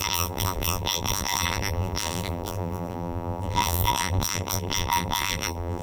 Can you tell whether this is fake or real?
fake